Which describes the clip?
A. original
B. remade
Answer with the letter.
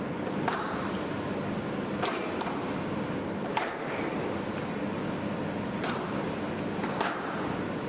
A